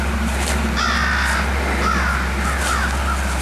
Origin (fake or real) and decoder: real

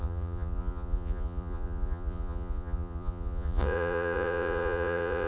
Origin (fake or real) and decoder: fake, vocoder, Vocos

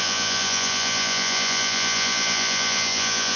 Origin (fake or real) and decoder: fake, vocoder, Vocos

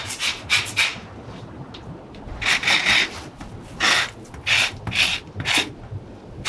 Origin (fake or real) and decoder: real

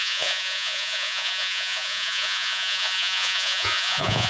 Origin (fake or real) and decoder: fake, vocoder, Vocos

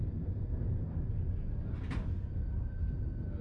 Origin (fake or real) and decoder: real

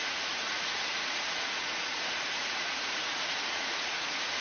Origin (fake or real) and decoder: fake, vocoder, Vocos